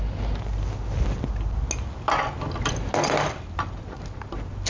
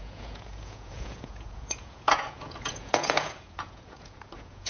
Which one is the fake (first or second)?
second